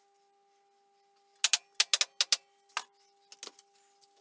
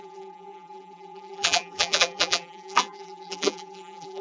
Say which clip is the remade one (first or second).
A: second